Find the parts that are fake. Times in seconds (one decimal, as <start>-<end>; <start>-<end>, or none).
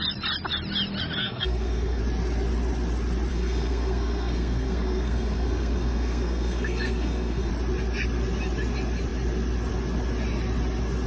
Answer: 1.2-2.0; 3.3-7.5